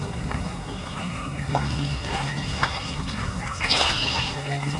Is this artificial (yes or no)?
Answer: yes